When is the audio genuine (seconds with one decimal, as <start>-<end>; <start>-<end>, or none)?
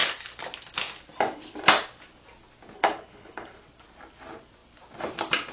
0.0-2.8; 3.5-5.5